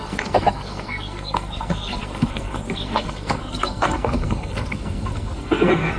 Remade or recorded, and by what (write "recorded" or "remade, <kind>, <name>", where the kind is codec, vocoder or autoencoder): remade, codec, SNAC